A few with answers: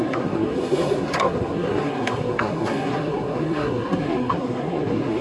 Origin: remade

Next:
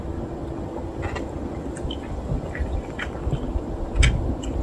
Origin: recorded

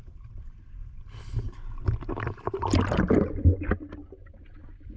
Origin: recorded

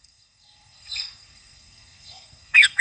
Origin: remade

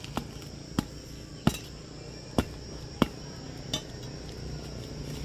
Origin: recorded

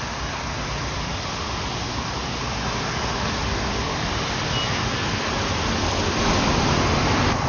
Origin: recorded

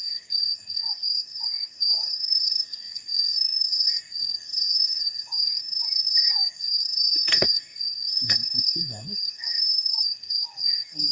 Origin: remade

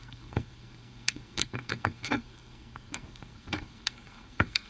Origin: remade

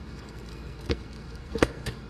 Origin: remade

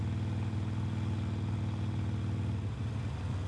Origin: recorded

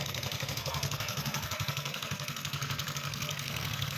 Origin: remade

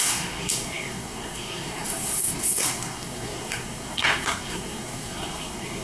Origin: remade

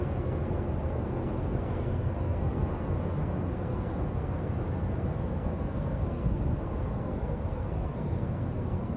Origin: remade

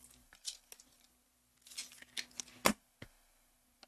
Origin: recorded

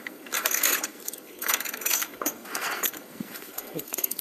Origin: remade